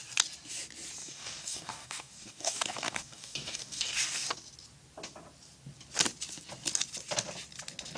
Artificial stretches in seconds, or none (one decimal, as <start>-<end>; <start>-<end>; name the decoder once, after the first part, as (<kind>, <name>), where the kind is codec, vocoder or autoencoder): 1.0-4.3 (codec, DAC)